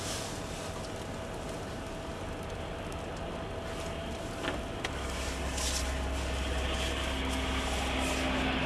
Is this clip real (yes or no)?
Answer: yes